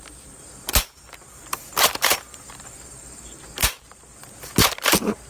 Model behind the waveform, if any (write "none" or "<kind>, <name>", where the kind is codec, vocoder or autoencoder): vocoder, BigVGAN v2